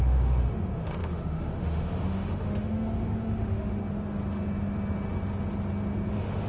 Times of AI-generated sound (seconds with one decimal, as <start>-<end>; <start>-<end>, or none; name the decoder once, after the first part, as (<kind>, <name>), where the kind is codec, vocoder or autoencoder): 0.0-3.7 (autoencoder, DAC-VAE); 6.1-6.5